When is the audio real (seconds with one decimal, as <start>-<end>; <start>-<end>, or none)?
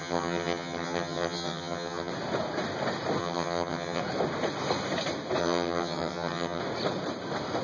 2.1-3.2; 4.0-5.4; 6.6-7.6